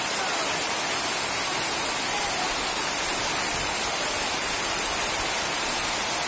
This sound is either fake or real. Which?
real